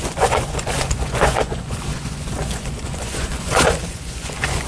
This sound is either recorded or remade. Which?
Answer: remade